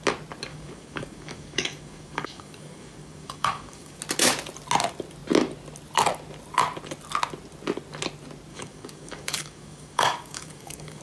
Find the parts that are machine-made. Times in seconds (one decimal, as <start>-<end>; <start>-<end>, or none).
0.5-4.0; 8.5-11.0